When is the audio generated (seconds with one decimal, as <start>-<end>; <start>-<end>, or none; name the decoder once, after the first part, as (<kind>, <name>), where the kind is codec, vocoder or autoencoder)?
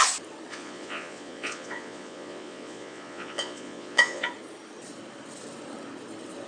0.5-4.3 (vocoder, Vocos)